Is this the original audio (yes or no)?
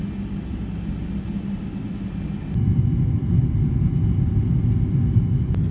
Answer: yes